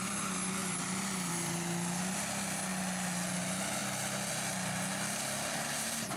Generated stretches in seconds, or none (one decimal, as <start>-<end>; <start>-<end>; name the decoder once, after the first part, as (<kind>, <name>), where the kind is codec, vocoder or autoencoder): none